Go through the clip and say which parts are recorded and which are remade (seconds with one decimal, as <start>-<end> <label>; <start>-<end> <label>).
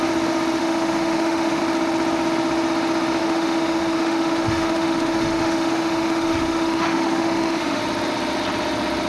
0.0-0.6 recorded; 0.6-1.6 remade; 1.6-3.2 recorded; 3.2-7.8 remade; 7.8-9.1 recorded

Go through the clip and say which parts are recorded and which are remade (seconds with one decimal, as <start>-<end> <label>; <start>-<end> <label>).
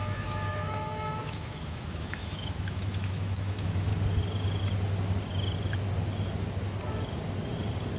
0.0-3.9 remade; 3.9-8.0 recorded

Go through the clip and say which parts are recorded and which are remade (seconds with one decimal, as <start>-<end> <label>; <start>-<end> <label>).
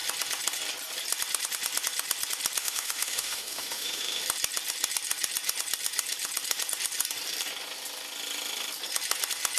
0.0-2.6 recorded; 2.6-4.2 remade; 4.2-9.6 recorded